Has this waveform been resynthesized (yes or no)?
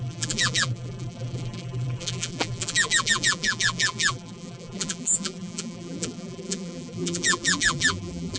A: yes